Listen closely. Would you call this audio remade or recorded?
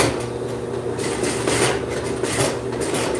recorded